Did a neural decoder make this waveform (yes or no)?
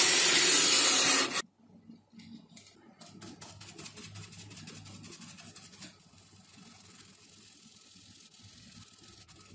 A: no